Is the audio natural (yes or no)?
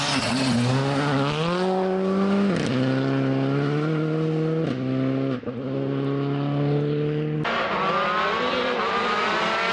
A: yes